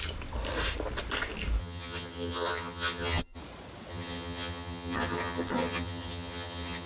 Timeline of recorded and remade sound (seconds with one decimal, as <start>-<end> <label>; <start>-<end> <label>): 0.0-1.6 recorded; 1.6-3.4 remade; 3.4-3.9 recorded; 3.9-6.9 remade

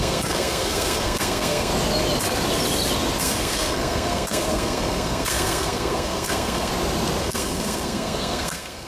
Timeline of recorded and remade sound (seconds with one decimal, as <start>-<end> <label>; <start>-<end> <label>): 0.0-1.7 remade; 1.7-3.2 recorded; 3.2-6.7 remade; 6.7-7.2 recorded; 7.2-8.9 remade

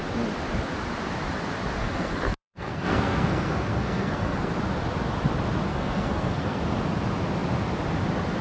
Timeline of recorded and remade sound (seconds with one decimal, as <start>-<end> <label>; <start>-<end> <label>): 0.0-1.8 recorded; 1.8-4.5 remade; 4.5-5.7 recorded; 5.7-6.6 remade; 6.6-8.4 recorded

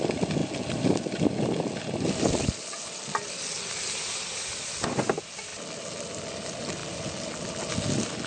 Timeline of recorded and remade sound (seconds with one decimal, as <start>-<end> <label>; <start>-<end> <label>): 0.0-8.3 recorded

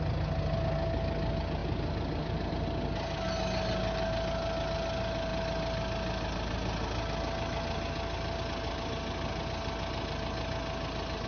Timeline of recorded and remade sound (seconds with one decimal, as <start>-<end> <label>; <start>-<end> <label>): 0.0-11.3 recorded

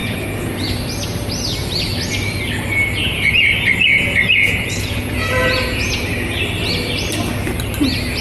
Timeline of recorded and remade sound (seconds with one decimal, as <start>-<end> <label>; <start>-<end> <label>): 0.0-0.7 remade; 0.7-3.0 recorded; 3.0-6.0 remade; 6.0-8.2 recorded